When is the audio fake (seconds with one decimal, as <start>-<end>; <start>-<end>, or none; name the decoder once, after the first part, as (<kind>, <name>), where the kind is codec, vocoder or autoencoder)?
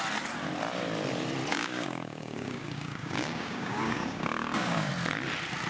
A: 1.5-4.9 (codec, DAC)